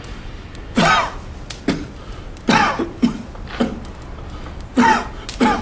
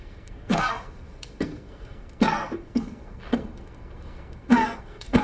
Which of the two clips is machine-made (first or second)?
second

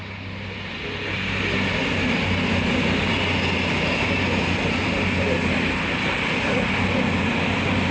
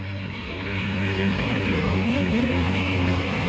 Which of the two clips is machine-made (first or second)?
second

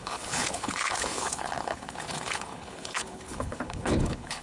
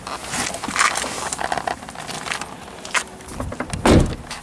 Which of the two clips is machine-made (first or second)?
first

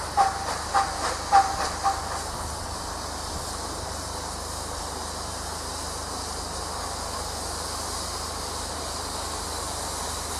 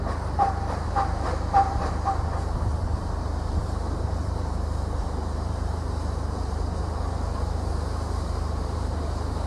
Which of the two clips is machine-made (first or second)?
second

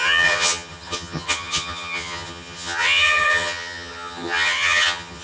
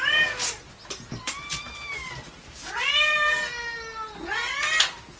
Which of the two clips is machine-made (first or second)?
first